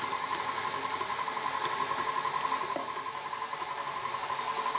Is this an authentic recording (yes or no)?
yes